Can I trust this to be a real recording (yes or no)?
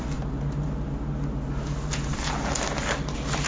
yes